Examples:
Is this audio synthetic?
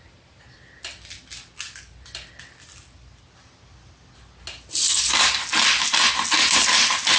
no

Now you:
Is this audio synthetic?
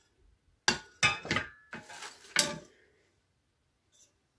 no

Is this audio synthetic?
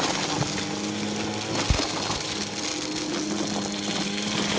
no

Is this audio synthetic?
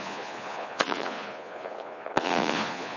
yes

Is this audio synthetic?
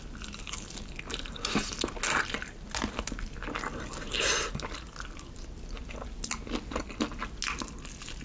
no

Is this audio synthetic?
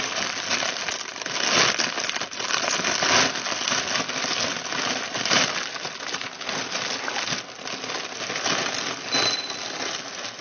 no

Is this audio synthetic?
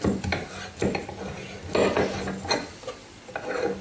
no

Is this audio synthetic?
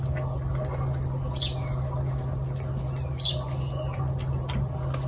no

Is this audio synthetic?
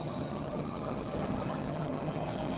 yes